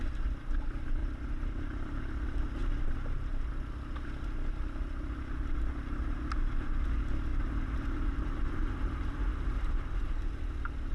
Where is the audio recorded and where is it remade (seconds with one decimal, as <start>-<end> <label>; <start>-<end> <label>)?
0.0-1.0 recorded; 1.0-2.0 remade; 2.0-2.6 recorded; 2.6-3.3 remade; 3.3-7.3 recorded; 7.3-10.2 remade; 10.2-10.9 recorded